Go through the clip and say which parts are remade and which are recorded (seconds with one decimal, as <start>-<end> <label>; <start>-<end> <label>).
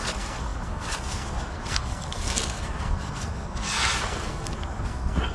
0.0-5.3 remade